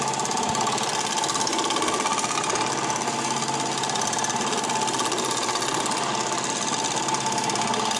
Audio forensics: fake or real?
real